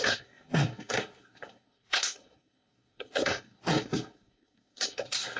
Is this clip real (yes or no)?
no